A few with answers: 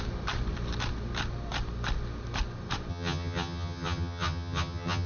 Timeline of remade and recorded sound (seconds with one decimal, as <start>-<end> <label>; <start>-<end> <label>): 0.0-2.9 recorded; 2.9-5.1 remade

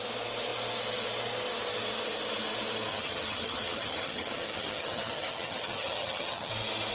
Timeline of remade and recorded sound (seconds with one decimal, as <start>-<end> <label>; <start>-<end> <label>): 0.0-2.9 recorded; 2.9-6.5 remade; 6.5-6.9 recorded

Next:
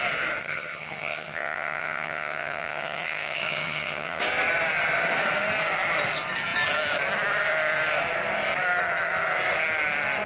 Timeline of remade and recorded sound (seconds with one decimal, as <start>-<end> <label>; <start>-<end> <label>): 0.0-0.4 recorded; 0.4-4.2 remade; 4.2-10.3 recorded

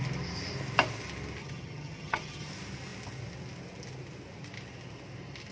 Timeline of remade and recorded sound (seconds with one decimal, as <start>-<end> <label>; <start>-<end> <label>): 0.0-1.4 recorded; 1.4-2.5 remade; 2.5-5.5 recorded